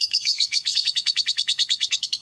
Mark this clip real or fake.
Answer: fake